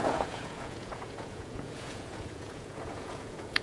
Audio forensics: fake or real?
fake